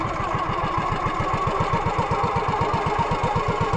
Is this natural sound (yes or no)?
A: yes